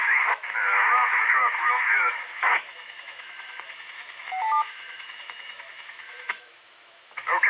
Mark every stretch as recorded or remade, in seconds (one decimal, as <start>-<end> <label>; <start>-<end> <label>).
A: 0.0-7.5 remade